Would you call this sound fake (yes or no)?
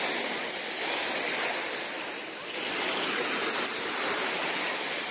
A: no